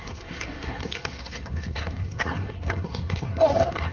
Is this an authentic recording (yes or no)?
no